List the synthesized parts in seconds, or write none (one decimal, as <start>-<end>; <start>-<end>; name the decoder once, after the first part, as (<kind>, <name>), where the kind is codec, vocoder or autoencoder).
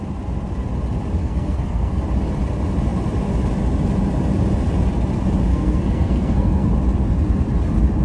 1.2-2.0 (codec, SNAC); 5.5-6.7